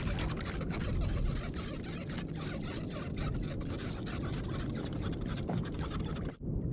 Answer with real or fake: fake